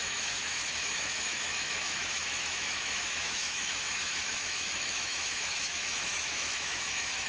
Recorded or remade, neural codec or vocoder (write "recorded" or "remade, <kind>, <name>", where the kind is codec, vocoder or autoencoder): remade, autoencoder, DAC-VAE